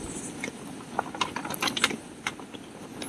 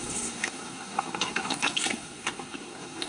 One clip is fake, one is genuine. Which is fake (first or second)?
second